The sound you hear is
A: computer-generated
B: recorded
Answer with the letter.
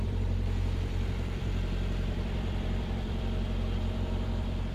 A